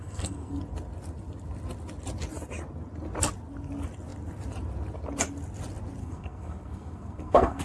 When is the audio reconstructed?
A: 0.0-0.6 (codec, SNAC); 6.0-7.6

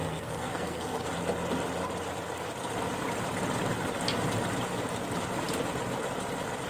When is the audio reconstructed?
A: 0.0-1.1 (codec, SNAC)

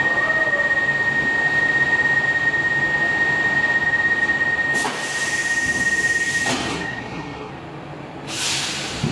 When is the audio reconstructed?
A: 6.7-7.5 (codec, SNAC)